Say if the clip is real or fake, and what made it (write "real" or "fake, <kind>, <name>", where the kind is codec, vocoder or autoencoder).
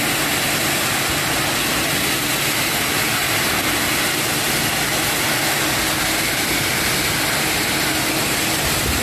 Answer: real